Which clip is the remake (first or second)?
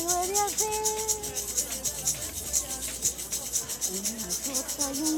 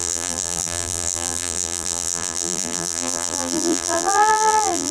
second